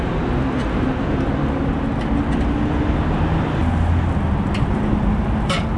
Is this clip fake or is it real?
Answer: real